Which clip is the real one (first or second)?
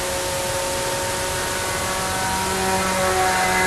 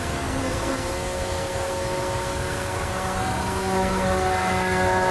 first